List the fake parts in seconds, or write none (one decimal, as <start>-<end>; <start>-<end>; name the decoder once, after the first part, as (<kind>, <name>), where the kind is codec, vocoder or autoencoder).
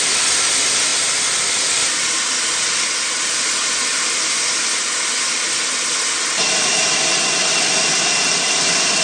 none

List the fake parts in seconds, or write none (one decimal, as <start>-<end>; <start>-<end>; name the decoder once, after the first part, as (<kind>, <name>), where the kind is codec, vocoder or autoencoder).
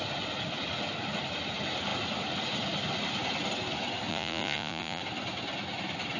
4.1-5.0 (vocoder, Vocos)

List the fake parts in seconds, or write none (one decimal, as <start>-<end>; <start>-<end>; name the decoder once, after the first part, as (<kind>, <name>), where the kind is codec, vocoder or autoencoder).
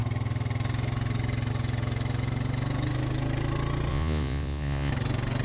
3.9-4.9 (vocoder, Vocos)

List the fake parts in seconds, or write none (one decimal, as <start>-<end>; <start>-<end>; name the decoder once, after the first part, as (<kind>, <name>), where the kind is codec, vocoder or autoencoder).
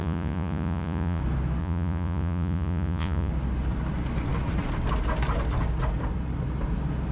0.0-1.2 (vocoder, Vocos); 1.6-3.3